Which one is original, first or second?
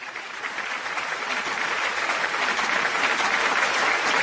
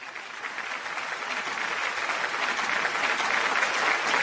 second